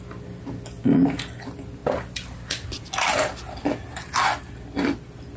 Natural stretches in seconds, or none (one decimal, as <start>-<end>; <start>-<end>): 0.0-5.4